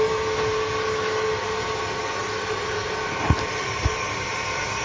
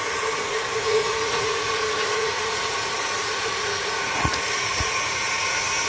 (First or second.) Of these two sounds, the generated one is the second